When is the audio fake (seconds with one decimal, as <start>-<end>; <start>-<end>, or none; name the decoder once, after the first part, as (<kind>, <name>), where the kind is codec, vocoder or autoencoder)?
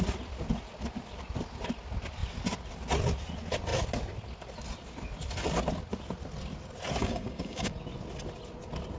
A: 7.0-7.7 (codec, DAC)